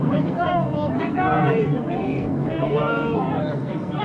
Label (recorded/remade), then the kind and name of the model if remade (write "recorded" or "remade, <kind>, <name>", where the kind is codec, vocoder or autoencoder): remade, codec, SNAC